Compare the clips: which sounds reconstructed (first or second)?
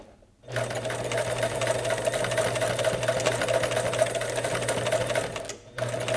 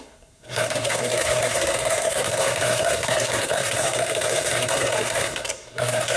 second